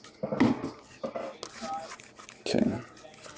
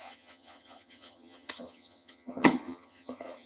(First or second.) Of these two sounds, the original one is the first